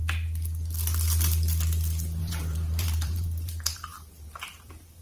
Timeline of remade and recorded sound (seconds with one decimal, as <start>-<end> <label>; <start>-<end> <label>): 0.0-2.2 recorded; 2.2-5.0 remade